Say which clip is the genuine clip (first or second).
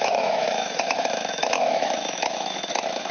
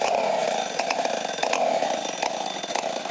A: second